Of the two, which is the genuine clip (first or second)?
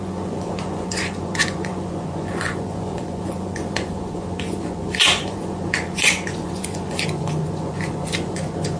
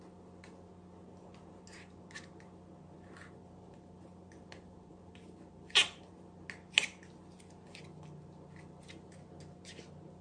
second